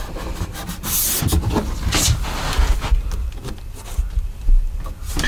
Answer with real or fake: real